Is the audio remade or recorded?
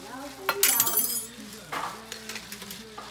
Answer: recorded